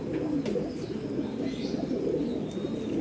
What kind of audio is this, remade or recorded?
recorded